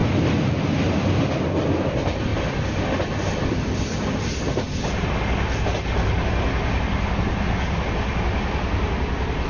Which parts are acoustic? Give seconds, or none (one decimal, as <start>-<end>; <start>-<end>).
0.0-9.5